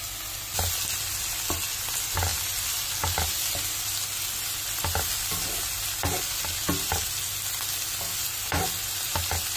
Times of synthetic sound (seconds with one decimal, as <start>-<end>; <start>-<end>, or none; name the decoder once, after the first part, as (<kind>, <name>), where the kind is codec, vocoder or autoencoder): none